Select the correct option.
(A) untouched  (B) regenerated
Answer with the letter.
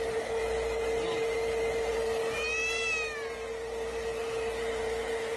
A